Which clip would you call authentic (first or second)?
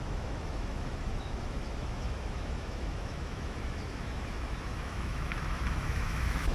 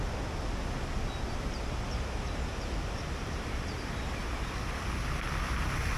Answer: second